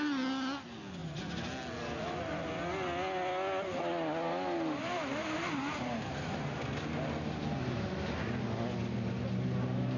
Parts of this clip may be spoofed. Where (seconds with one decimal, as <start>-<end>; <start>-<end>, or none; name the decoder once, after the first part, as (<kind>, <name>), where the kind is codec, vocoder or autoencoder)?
5.2-6.0 (vocoder, BigVGAN v2)